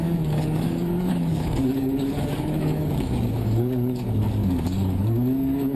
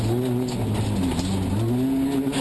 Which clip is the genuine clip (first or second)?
second